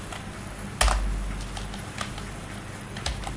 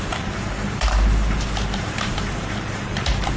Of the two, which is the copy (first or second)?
second